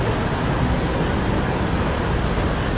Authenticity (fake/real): real